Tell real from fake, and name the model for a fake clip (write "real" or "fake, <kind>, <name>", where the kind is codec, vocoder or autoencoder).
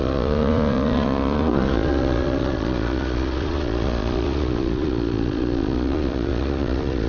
fake, vocoder, Vocos